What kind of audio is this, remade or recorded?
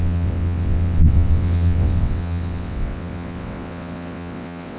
remade